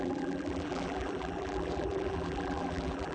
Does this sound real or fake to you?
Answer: fake